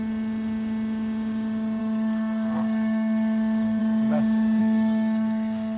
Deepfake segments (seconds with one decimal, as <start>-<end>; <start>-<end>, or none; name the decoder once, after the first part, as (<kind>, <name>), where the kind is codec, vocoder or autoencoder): 1.8-3.8 (codec, SNAC); 4.6-5.8